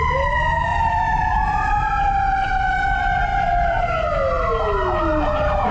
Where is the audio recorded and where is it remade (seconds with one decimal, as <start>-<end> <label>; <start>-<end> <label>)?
0.0-0.7 recorded; 0.7-1.9 remade; 1.9-3.3 recorded; 3.3-3.8 remade; 3.8-5.7 recorded